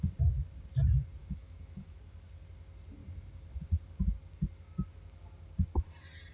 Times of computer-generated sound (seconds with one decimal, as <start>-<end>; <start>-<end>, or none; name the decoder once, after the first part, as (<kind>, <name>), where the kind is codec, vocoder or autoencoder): 1.2-2.0 (autoencoder, DAC-VAE)